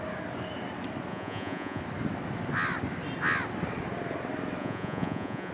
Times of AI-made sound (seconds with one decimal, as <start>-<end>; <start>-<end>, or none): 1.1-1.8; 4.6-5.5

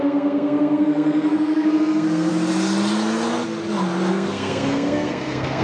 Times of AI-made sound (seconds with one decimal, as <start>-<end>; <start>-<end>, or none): 0.0-2.3; 4.1-5.6

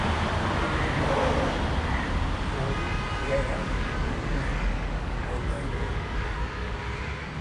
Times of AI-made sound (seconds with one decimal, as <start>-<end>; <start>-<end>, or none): 3.6-7.4